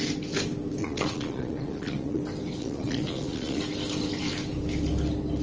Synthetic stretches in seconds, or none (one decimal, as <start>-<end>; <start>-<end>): 0.8-2.2; 2.6-3.6

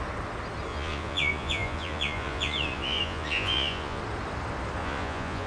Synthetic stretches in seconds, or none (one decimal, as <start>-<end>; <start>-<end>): 0.7-4.0; 4.8-5.5

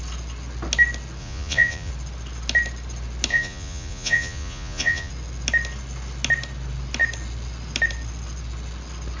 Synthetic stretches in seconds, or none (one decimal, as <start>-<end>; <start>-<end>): 1.2-1.9; 3.3-5.1

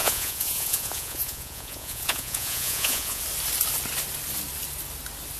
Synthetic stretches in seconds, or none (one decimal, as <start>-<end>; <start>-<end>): 0.0-3.2

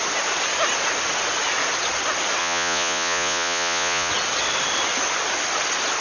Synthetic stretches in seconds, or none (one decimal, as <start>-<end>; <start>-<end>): 2.4-4.1

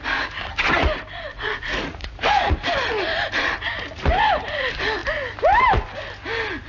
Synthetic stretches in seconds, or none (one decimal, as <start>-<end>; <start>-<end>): 1.3-2.5

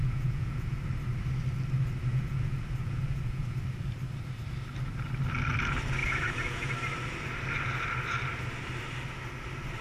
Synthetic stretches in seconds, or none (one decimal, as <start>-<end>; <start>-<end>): 0.0-0.8; 2.1-3.6; 6.0-6.7